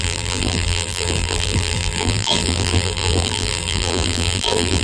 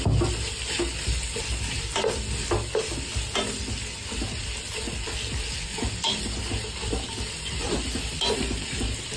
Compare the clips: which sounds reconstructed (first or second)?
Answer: first